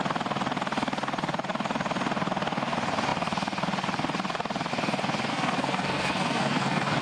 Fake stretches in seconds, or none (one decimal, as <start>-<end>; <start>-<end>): 5.3-7.0